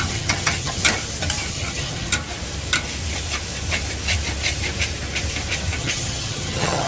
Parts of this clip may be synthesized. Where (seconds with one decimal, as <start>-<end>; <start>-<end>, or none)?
0.0-0.8; 1.5-2.1; 5.8-6.9